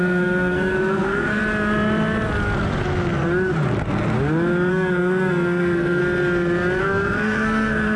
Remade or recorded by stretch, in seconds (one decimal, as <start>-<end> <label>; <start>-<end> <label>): 0.0-1.4 remade; 1.4-4.7 recorded; 4.7-6.0 remade; 6.0-6.8 recorded; 6.8-8.0 remade